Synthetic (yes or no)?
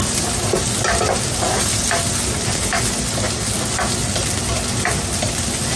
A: no